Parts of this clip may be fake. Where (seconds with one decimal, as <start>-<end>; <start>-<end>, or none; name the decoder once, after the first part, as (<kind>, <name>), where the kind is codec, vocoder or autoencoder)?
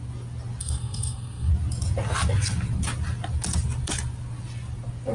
0.6-1.5 (codec, SNAC)